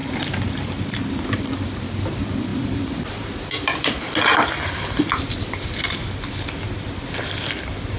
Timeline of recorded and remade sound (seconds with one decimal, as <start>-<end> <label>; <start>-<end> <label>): 0.0-1.2 recorded; 1.2-6.0 remade; 6.0-8.0 recorded